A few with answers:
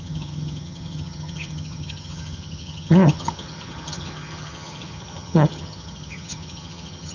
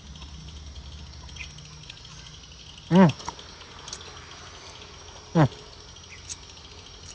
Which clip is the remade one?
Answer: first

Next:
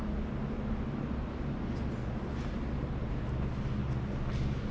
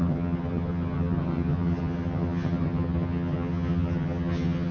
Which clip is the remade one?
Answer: second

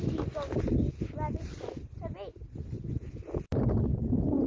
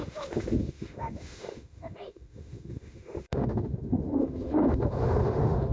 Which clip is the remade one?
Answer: second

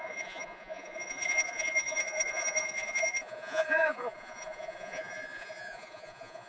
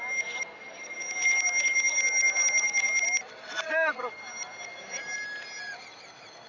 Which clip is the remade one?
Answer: first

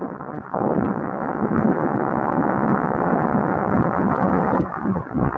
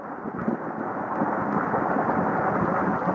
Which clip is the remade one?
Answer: first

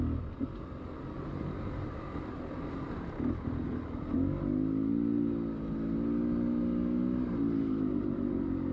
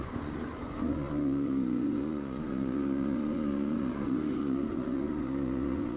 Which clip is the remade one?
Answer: second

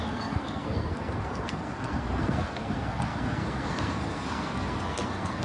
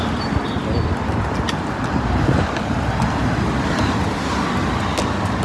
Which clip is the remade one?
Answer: first